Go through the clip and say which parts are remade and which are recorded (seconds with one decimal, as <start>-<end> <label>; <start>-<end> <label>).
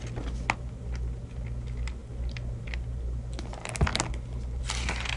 0.0-5.2 recorded